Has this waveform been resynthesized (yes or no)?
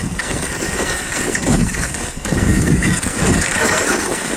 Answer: yes